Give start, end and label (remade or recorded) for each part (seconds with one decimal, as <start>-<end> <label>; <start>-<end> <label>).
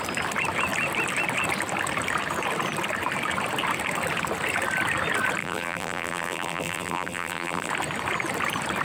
0.0-5.4 recorded; 5.4-7.7 remade; 7.7-8.8 recorded